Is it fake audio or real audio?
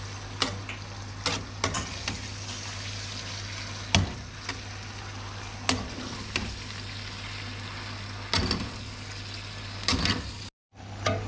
real